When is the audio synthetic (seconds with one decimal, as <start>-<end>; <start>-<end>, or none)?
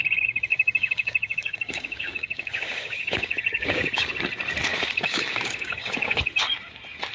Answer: 0.5-4.1; 4.7-6.2